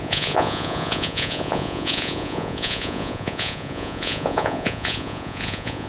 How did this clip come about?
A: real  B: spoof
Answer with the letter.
B